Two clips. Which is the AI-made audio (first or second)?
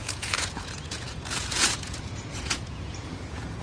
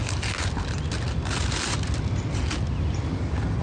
first